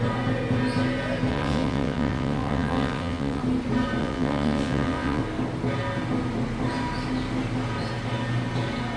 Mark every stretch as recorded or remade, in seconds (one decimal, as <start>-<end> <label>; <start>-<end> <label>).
0.0-1.3 recorded; 1.3-3.4 remade; 3.4-4.0 recorded; 4.0-5.2 remade; 5.2-9.0 recorded